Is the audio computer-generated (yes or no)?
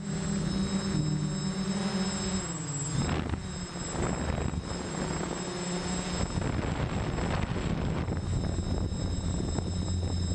no